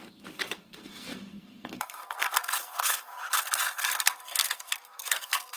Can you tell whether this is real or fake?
fake